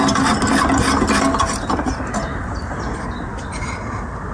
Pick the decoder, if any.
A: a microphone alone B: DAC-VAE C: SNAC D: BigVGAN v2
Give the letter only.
A